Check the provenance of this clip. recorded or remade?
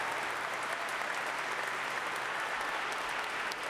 recorded